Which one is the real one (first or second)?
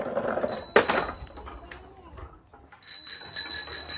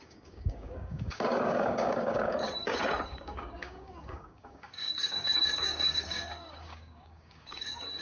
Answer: first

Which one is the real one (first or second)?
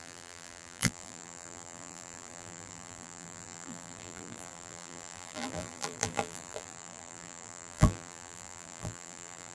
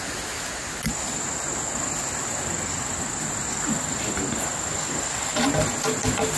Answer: second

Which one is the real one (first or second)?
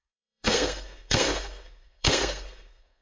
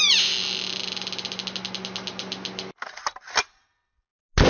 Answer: second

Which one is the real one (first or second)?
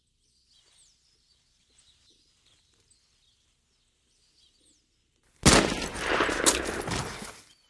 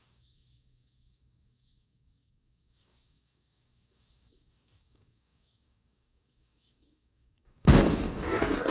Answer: first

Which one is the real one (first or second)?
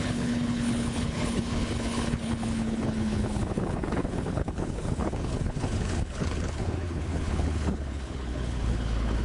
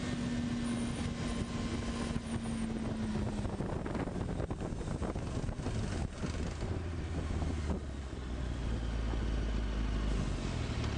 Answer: second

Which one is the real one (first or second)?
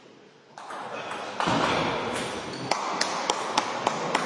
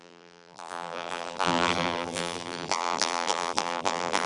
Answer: first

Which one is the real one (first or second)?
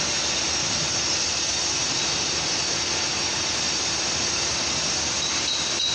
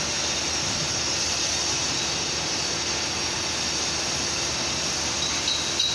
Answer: second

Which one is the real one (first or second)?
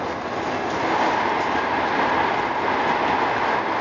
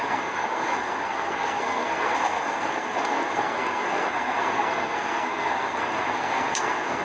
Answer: first